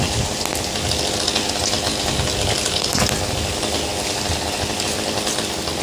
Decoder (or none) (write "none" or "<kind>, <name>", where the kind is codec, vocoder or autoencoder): none